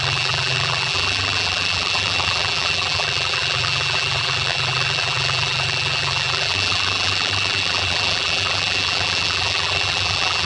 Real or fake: fake